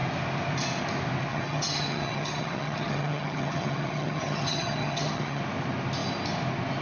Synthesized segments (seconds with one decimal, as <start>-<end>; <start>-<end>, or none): 1.3-5.4